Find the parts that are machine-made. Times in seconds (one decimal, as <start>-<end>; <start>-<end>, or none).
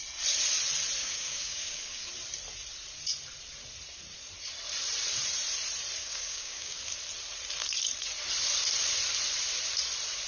1.0-2.1; 6.0-6.8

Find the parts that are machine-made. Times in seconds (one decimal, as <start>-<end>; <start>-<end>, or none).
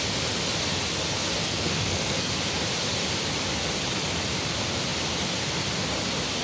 1.4-2.3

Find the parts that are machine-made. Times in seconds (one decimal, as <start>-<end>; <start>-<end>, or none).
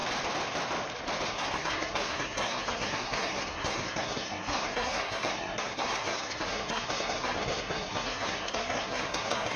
1.3-9.6